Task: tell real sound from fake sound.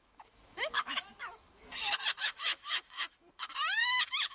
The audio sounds fake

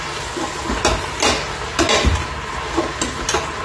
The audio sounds real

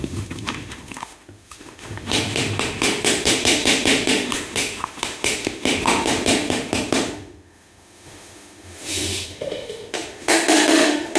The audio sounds fake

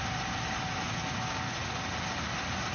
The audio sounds real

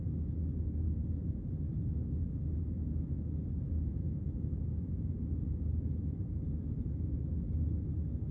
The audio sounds fake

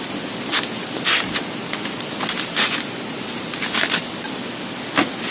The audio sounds real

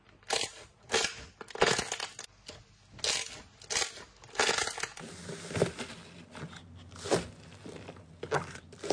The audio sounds real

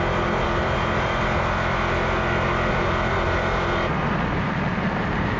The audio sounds real